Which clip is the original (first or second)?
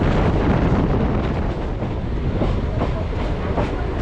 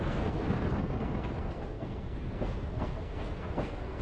first